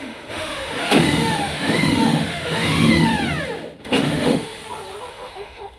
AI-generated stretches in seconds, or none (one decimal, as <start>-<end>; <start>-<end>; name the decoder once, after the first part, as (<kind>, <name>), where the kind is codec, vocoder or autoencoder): 0.0-3.1 (autoencoder, DAC-VAE); 3.8-4.6; 5.1-5.8